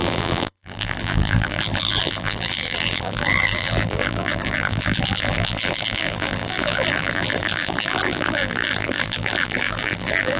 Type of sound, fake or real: fake